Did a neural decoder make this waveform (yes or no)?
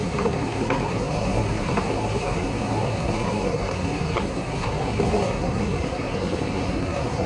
yes